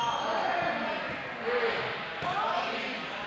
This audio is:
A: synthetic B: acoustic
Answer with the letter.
B